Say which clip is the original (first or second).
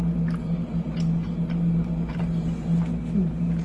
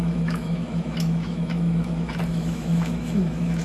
first